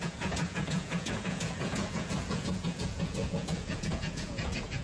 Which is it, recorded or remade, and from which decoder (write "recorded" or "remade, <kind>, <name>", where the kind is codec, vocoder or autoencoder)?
remade, vocoder, Vocos